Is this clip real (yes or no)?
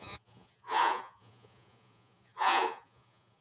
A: no